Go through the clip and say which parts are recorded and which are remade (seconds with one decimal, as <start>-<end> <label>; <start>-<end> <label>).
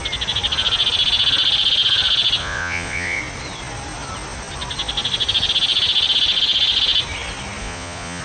0.0-2.4 recorded; 2.4-3.2 remade; 3.2-7.6 recorded; 7.6-8.2 remade